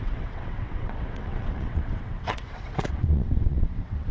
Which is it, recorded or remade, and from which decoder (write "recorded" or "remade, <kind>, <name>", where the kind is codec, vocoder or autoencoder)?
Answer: remade, vocoder, WaveNeXt